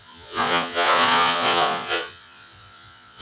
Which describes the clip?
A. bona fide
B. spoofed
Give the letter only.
B